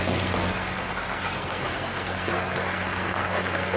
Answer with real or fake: fake